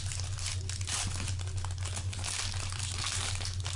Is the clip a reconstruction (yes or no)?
no